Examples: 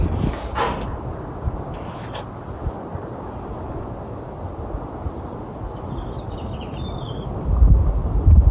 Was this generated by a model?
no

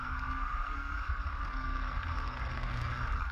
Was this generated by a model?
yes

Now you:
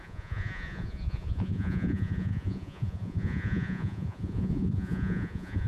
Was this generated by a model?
yes